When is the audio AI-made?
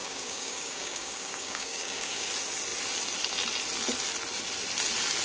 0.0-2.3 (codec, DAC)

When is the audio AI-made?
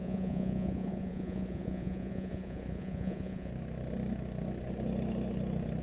0.0-3.5 (vocoder, Vocos)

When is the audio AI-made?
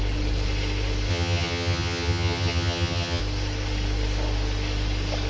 1.1-3.2 (vocoder, HiFi-GAN)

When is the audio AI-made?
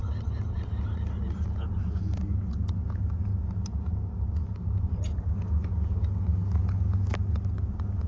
none